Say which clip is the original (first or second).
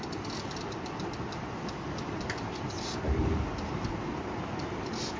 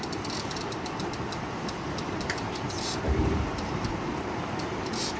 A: first